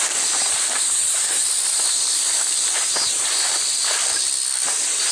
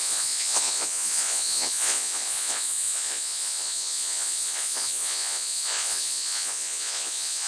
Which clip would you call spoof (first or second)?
second